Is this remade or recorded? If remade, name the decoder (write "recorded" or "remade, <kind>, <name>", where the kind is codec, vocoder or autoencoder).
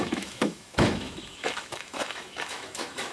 remade, autoencoder, DAC-VAE